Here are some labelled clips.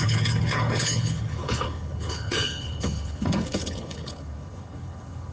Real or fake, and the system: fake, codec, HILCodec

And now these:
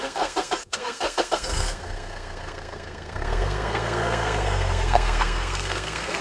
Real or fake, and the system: fake, codec, SNAC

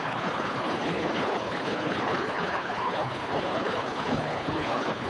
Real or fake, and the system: fake, codec, HILCodec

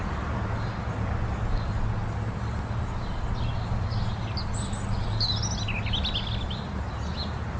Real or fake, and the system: real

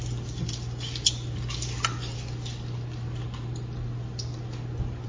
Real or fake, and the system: real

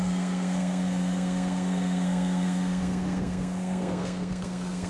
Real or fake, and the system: fake, codec, SNAC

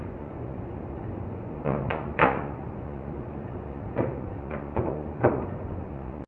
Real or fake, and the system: fake, vocoder, Vocos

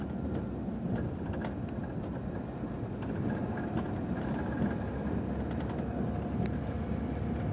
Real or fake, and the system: real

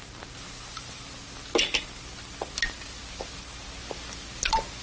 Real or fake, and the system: real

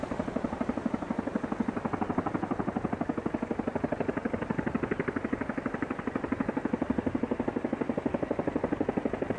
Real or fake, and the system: real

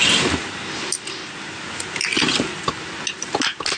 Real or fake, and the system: real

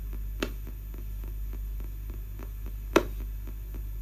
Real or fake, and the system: real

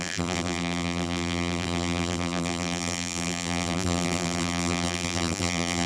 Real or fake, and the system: fake, vocoder, BigVGAN v2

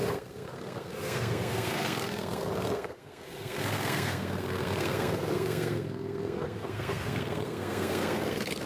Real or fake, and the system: fake, codec, SNAC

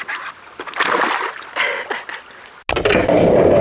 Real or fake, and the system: real